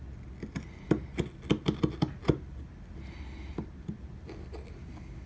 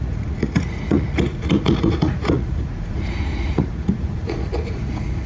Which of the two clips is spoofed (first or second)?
second